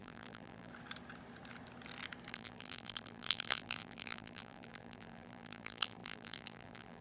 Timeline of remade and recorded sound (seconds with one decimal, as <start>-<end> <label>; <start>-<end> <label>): 0.0-0.7 remade; 0.7-2.3 recorded; 2.3-7.0 remade